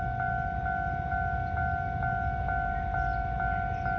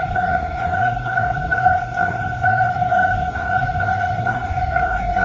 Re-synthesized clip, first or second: second